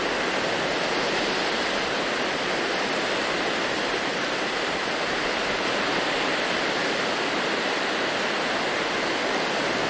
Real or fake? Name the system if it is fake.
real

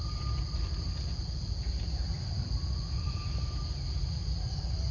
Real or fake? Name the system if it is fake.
real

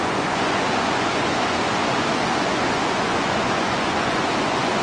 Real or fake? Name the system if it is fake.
fake, vocoder, Vocos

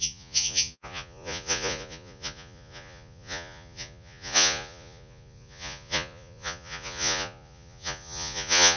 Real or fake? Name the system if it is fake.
fake, vocoder, Vocos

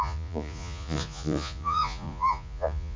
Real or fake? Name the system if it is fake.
fake, vocoder, Vocos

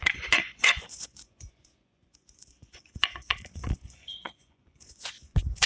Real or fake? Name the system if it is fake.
fake, vocoder, Vocos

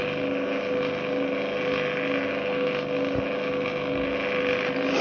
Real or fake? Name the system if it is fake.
real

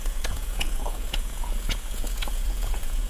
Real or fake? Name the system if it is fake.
fake, vocoder, Vocos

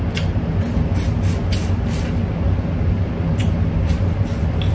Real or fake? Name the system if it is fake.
real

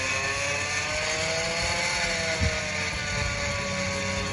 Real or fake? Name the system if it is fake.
real